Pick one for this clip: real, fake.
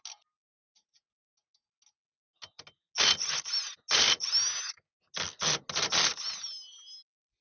real